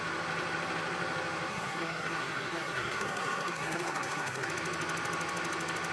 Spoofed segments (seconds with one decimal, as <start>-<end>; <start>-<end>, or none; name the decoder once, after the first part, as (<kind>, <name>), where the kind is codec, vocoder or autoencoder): 1.5-4.5 (codec, SNAC)